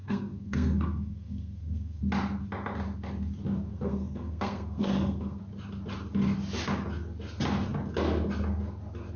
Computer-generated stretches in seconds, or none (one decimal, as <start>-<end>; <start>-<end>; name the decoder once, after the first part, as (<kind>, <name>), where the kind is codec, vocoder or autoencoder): 0.0-2.0 (codec, SNAC); 3.7-5.4